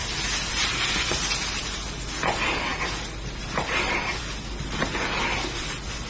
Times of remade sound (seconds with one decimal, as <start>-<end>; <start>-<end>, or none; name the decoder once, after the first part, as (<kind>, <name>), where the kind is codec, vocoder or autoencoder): none